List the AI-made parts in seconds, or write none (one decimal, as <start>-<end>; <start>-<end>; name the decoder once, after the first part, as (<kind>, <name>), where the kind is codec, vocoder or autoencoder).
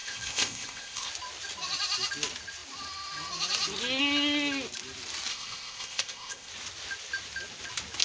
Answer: 0.0-1.1 (codec, ZipCodec); 5.3-6.5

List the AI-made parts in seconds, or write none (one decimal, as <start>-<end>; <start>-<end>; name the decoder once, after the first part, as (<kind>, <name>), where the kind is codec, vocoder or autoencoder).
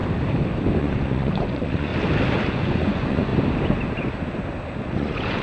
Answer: 0.8-1.9 (vocoder, Vocos); 2.5-3.3; 4.8-5.4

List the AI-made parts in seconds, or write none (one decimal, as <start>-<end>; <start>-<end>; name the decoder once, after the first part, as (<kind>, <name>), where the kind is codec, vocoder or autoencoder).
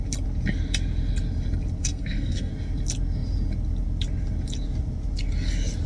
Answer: 1.8-2.5 (codec, SNAC)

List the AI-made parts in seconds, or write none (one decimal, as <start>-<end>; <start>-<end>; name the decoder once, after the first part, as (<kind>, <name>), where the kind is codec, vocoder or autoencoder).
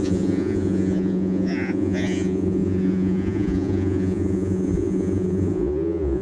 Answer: 0.0-6.2 (vocoder, Vocos)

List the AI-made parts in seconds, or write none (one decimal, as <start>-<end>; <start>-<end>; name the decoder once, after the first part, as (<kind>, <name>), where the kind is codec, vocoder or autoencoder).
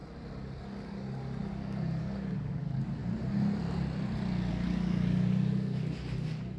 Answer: 0.6-3.0 (codec, DAC); 4.5-6.6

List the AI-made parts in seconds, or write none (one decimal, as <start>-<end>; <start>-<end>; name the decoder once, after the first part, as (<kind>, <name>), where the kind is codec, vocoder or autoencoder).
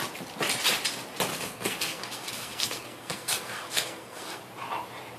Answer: 1.3-4.4 (codec, SNAC)